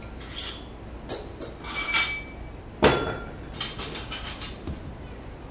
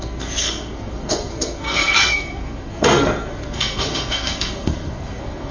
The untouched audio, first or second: first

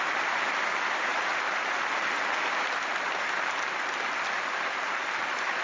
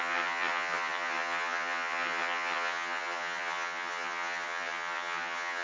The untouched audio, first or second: first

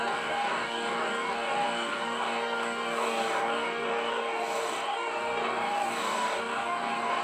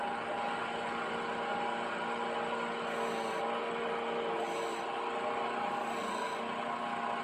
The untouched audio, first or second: second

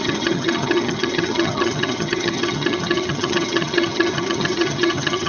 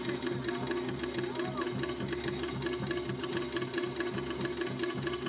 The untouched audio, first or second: second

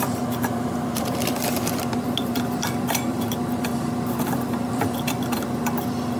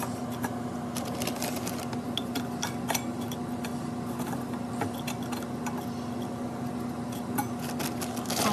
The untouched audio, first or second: second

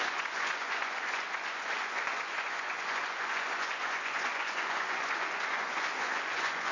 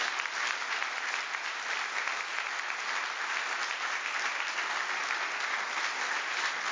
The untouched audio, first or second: second